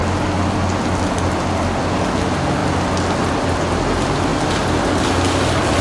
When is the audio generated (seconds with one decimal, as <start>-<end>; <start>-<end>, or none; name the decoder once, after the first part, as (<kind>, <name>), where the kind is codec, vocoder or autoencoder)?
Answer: none

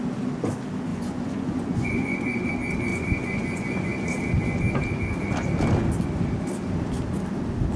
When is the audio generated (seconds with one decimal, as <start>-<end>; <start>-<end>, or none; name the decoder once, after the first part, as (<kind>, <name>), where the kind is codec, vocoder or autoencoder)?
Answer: 0.9-2.5 (vocoder, Vocos); 2.9-4.2

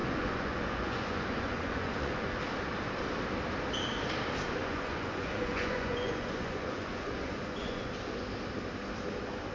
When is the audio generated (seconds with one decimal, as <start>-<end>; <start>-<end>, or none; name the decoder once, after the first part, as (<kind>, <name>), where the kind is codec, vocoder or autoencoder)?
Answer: 0.0-2.4 (vocoder, Vocos); 4.6-7.9

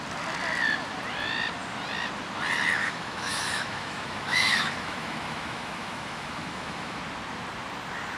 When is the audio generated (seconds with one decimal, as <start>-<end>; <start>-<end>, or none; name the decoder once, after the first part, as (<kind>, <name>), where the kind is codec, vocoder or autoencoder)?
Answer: 2.8-7.0 (autoencoder, DAC-VAE)

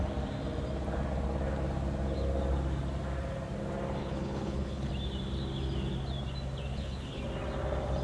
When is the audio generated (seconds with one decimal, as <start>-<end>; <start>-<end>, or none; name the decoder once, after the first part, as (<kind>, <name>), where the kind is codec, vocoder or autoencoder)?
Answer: 4.0-4.9 (codec, HILCodec); 6.7-7.2

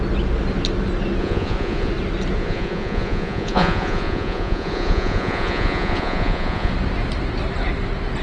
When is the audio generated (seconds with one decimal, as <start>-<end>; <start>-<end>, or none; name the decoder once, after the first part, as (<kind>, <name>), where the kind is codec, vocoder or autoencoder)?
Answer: 1.2-1.9 (vocoder, Vocos); 2.4-6.7

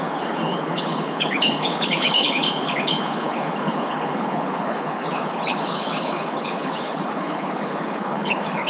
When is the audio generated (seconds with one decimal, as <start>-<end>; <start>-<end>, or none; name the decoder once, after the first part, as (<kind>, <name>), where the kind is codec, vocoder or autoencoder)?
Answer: 0.0-8.7 (codec, HILCodec)